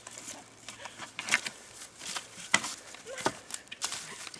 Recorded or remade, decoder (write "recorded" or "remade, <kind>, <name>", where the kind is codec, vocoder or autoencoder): recorded